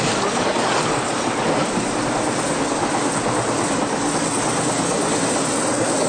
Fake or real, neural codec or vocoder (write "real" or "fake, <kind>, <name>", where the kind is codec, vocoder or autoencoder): real